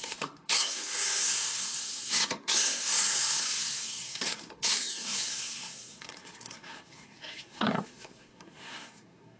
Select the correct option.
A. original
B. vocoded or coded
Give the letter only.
B